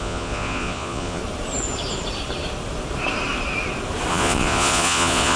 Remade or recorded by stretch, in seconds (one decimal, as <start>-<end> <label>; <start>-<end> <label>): 0.0-1.2 remade; 1.2-4.1 recorded; 4.1-5.4 remade